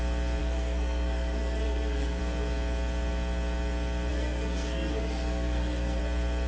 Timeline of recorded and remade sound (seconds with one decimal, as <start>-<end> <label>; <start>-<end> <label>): 0.0-0.4 recorded; 0.4-2.2 remade; 2.2-4.1 recorded; 4.1-6.0 remade; 6.0-6.5 recorded

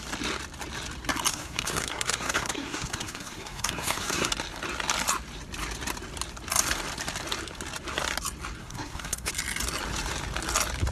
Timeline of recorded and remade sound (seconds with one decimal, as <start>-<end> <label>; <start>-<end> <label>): 0.0-1.3 recorded; 1.3-4.3 remade; 4.3-8.6 recorded; 8.6-9.3 remade; 9.3-10.9 recorded

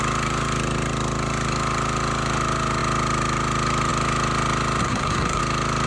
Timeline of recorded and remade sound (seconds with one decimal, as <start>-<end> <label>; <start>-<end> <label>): 0.0-4.8 recorded; 4.8-5.4 remade; 5.4-5.9 recorded

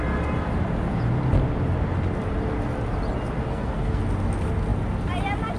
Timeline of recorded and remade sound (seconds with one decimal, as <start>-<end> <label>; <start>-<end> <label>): 0.0-3.5 recorded; 3.5-4.0 remade; 4.0-5.6 recorded

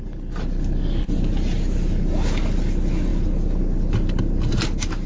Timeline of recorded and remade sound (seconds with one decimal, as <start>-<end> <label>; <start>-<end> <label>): 0.0-5.1 recorded

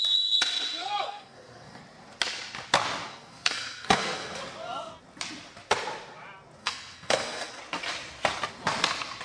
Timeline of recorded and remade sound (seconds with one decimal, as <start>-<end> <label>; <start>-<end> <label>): 0.0-0.8 recorded; 0.8-1.8 remade; 1.8-3.1 recorded; 3.1-4.4 remade; 4.4-6.6 recorded; 6.6-7.6 remade; 7.6-9.2 recorded

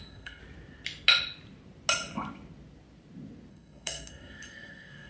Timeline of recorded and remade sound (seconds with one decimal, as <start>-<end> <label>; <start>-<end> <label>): 0.0-0.4 remade; 0.4-3.5 recorded; 3.5-5.1 remade

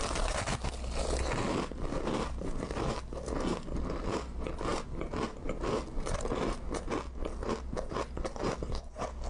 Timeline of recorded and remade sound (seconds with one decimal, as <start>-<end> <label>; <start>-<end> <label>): 0.0-9.3 recorded